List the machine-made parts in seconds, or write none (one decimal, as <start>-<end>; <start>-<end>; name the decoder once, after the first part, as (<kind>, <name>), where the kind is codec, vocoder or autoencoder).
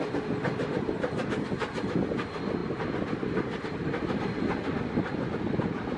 none